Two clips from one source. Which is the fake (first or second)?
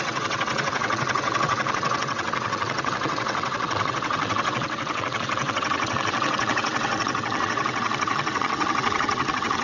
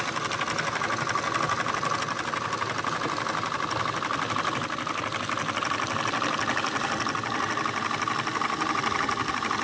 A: first